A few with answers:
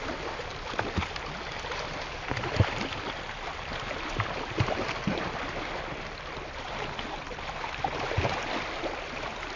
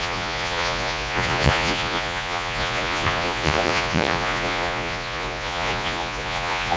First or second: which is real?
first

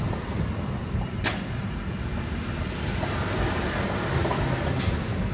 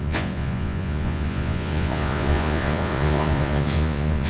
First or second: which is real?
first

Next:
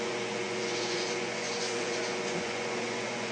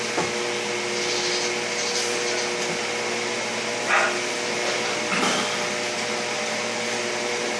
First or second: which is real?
second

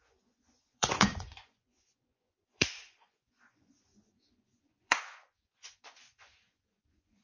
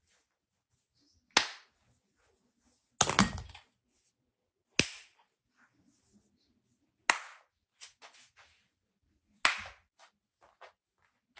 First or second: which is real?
second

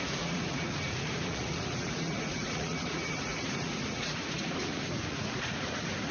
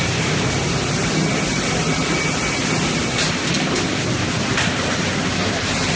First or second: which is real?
second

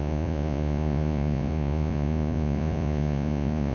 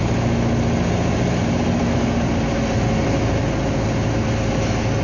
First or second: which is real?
second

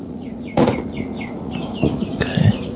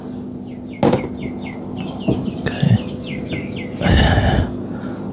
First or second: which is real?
second